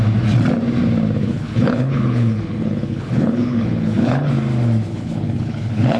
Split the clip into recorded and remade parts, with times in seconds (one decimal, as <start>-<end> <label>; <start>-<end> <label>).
0.0-1.2 recorded; 1.2-4.3 remade; 4.3-4.9 recorded; 4.9-6.0 remade